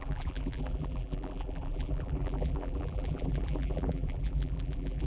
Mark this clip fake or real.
fake